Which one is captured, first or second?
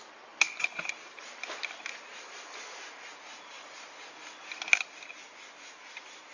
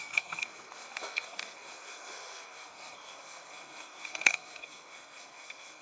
first